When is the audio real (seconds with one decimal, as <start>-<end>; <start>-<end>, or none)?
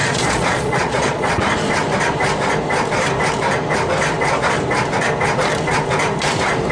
1.4-6.7